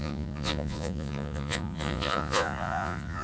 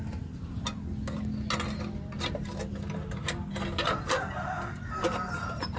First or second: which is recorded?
second